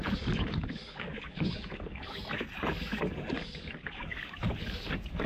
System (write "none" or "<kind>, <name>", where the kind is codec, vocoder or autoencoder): codec, DAC